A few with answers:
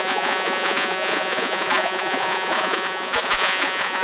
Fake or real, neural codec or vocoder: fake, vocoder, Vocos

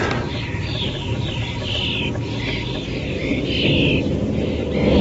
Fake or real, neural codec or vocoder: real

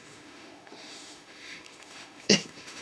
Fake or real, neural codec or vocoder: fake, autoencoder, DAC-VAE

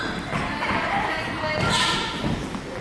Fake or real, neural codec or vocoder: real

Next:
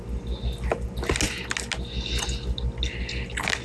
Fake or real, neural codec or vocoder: real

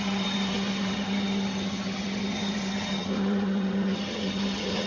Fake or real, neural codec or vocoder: fake, vocoder, HiFi-GAN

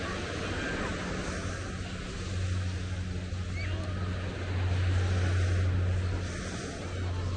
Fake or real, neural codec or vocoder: real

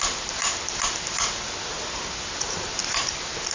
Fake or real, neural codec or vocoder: real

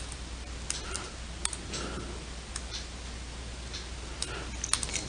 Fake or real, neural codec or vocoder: real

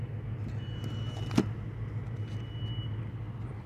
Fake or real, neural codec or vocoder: real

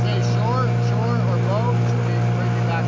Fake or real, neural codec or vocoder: real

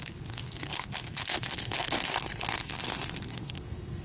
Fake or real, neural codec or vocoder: fake, codec, SNAC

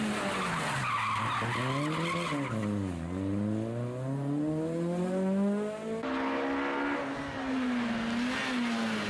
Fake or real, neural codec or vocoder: real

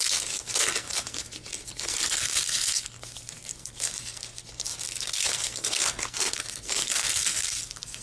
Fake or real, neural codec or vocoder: fake, codec, SNAC